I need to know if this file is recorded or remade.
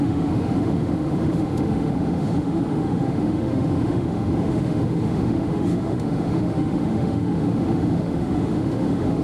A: remade